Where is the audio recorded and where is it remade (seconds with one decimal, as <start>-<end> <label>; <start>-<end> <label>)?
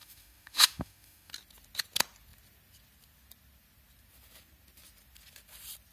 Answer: 0.0-1.3 remade; 1.3-5.9 recorded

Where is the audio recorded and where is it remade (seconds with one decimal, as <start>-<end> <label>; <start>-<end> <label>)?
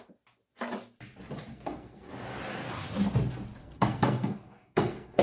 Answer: 0.0-1.5 recorded; 1.5-2.1 remade; 2.1-3.6 recorded; 3.6-5.2 remade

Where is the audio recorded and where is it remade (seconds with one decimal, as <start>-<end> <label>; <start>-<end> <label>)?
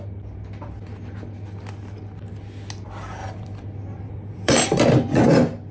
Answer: 0.0-3.2 recorded; 3.2-5.3 remade; 5.3-5.7 recorded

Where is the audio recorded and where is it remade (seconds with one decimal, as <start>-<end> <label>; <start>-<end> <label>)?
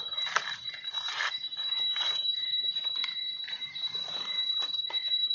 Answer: 0.0-5.3 recorded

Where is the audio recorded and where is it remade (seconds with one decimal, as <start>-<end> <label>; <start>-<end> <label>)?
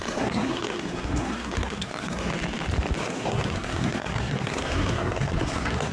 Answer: 0.0-2.3 remade; 2.3-3.0 recorded; 3.0-5.9 remade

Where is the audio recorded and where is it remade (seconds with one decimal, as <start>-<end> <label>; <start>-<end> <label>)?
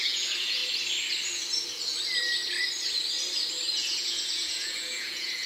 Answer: 0.0-0.6 remade; 0.6-3.7 recorded; 3.7-5.5 remade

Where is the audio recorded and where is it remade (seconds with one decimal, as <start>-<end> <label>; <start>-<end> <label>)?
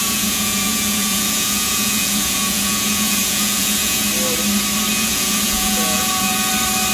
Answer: 0.0-4.1 remade; 4.1-4.9 recorded; 4.9-6.5 remade; 6.5-6.9 recorded